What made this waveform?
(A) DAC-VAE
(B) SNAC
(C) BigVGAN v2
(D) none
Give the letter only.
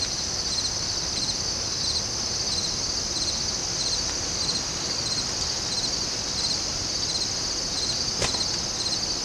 D